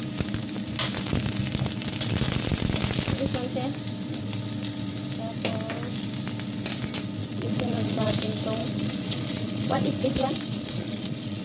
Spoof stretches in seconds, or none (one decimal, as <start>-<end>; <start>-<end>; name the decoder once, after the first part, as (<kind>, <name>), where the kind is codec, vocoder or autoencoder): 7.2-8.2 (vocoder, Vocos); 8.6-11.4